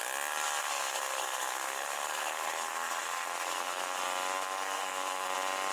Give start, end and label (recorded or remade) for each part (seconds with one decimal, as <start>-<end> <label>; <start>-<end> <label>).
0.0-0.6 recorded; 0.6-4.0 remade; 4.0-4.4 recorded; 4.4-5.3 remade; 5.3-5.7 recorded